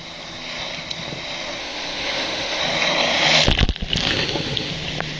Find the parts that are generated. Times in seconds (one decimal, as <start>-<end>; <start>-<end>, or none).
1.6-2.6; 4.0-4.7